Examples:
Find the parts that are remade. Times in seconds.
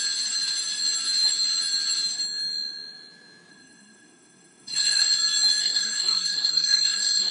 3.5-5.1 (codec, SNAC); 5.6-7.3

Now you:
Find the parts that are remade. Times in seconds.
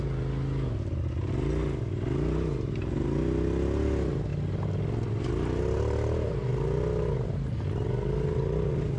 none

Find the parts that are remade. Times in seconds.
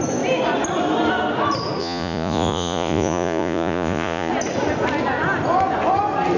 1.8-4.3 (vocoder, Vocos)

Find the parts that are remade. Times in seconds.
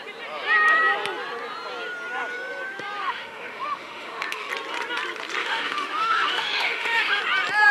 3.0-4.5 (autoencoder, DAC-VAE); 5.4-7.2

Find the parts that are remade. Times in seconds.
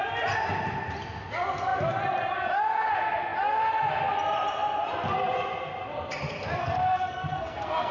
6.6-7.9 (codec, SNAC)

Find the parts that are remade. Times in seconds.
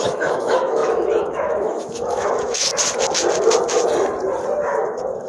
0.0-2.7 (autoencoder, DAC-VAE); 4.7-5.3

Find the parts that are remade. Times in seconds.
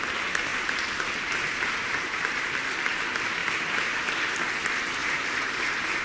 0.5-2.5 (vocoder, BigVGAN v2); 3.4-4.3; 5.0-5.5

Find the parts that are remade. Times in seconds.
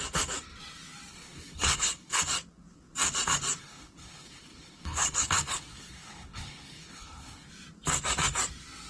1.1-2.2 (codec, HILCodec); 3.6-7.5